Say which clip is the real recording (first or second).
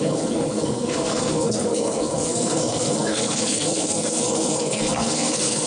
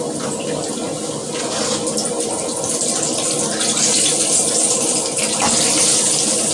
second